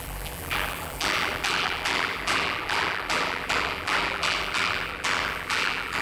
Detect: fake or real fake